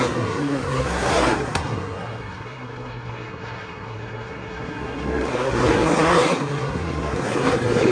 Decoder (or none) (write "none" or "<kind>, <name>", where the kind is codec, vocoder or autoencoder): codec, SNAC